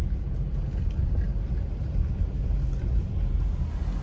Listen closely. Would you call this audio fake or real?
real